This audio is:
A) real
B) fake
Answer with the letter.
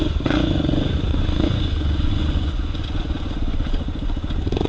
B